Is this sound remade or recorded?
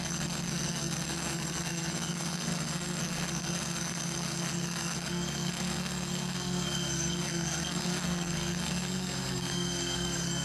remade